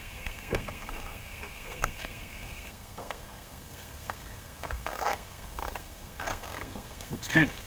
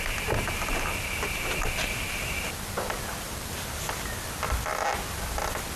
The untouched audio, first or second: second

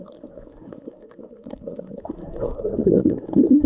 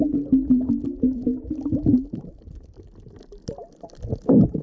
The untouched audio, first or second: second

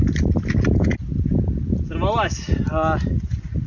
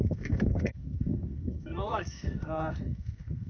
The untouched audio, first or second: first